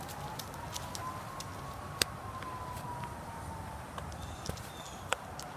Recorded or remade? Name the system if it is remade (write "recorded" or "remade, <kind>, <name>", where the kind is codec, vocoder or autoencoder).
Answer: recorded